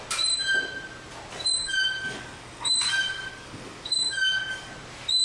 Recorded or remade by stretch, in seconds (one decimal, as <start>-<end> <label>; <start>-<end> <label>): 0.0-1.6 recorded; 1.6-4.7 remade; 4.7-5.2 recorded